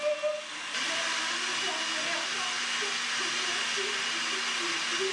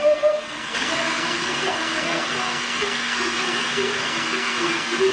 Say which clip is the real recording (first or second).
first